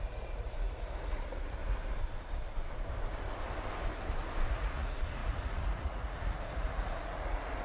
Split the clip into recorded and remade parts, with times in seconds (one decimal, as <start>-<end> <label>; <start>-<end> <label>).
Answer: 0.0-1.6 remade; 1.6-4.5 recorded; 4.5-7.6 remade